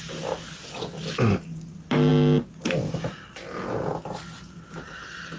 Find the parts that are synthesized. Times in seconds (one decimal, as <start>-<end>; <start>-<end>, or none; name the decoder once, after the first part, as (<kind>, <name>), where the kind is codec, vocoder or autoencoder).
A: none